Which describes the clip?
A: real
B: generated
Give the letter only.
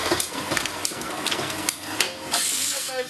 B